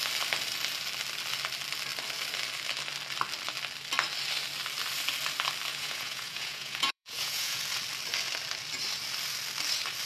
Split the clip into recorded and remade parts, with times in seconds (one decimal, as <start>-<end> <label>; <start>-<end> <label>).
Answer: 0.0-5.7 recorded; 5.7-7.6 remade; 7.6-10.1 recorded